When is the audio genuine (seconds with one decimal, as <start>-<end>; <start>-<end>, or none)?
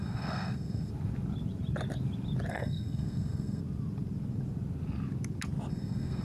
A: 0.9-2.5; 3.6-5.7